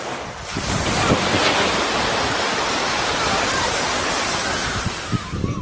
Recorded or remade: recorded